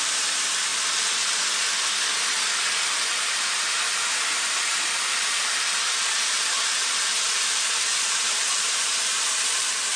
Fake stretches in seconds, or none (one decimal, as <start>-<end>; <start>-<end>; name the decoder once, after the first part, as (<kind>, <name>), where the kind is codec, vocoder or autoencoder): 0.0-0.7 (vocoder, BigVGAN v2); 3.0-7.1; 8.1-10.0